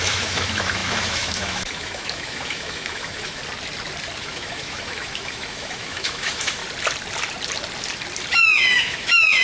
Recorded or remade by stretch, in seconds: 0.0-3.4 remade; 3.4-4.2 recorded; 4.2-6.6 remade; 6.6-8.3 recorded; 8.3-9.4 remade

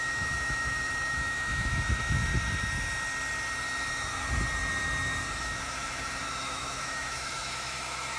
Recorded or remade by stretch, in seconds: 0.0-2.3 remade; 2.3-5.4 recorded; 5.4-8.2 remade

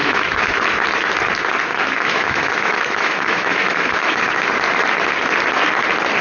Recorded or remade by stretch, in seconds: 0.0-0.6 remade; 0.6-1.7 recorded; 1.7-4.3 remade; 4.3-6.2 recorded

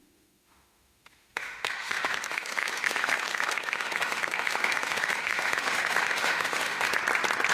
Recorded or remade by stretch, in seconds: 0.0-6.9 remade; 6.9-7.5 recorded

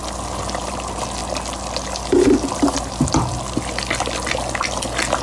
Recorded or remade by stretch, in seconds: 0.0-5.2 recorded

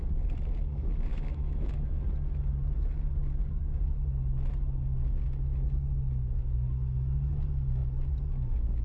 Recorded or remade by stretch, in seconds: 0.0-1.1 recorded; 1.1-2.0 remade; 2.0-8.8 recorded

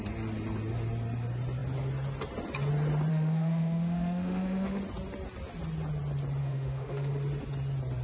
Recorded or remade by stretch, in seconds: 0.0-3.1 recorded; 3.1-4.8 remade; 4.8-6.4 recorded; 6.4-7.1 remade; 7.1-8.0 recorded

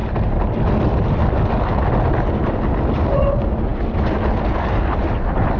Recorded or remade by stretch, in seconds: 0.0-5.6 recorded